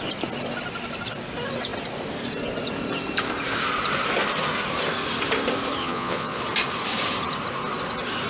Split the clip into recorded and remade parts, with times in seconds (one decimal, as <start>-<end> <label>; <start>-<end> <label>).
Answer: 0.0-5.8 recorded; 5.8-6.4 remade; 6.4-8.3 recorded